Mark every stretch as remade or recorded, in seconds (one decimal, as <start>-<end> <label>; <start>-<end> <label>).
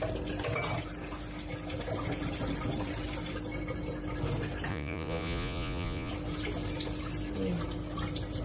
0.0-4.7 recorded; 4.7-6.1 remade; 6.1-8.4 recorded